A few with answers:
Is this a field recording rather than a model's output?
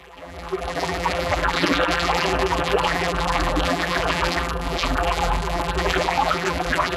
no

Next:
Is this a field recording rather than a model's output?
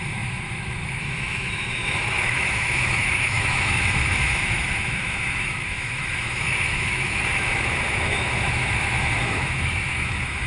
no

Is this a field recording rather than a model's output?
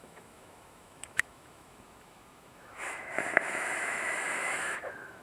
no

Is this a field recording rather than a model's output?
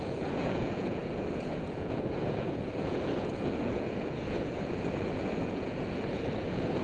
no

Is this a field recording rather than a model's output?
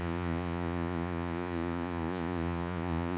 no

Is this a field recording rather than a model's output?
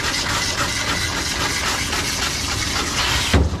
yes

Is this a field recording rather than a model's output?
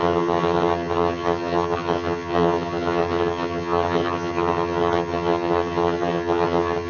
no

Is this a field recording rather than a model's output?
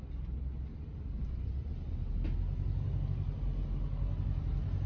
yes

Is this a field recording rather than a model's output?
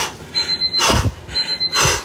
yes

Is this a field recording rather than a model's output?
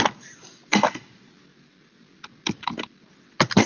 yes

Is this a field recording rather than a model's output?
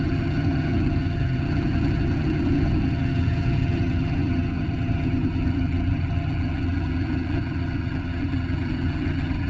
no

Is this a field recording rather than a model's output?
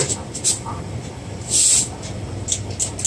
yes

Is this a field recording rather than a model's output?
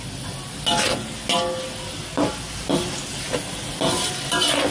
yes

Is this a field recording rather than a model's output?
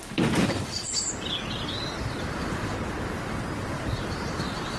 yes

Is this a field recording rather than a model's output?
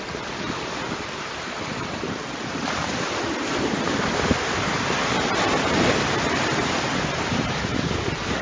yes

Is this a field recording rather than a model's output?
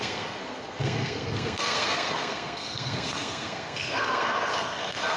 no